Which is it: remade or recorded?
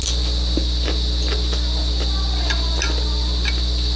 recorded